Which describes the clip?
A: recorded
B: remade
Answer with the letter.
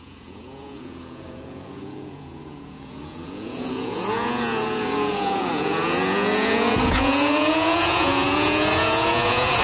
B